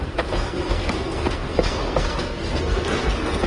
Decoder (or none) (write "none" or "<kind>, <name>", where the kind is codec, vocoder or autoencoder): codec, SNAC